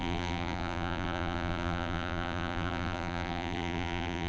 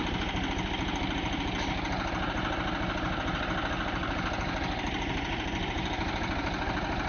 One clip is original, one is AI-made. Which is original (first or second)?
second